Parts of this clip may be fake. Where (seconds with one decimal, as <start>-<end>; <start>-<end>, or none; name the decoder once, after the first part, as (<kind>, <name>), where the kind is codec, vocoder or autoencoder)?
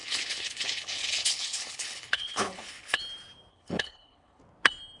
0.0-3.0 (codec, HILCodec); 3.5-4.4